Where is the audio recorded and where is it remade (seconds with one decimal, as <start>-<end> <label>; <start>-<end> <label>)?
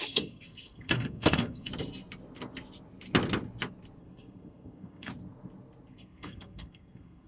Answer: 0.0-1.7 remade; 1.7-4.0 recorded; 4.0-5.1 remade; 5.1-5.9 recorded; 5.9-7.3 remade